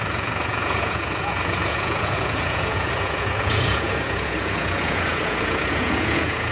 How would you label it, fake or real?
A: fake